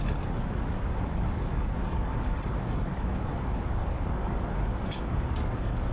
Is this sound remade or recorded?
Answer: remade